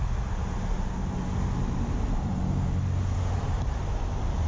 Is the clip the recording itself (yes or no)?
yes